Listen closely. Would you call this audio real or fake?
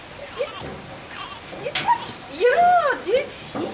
real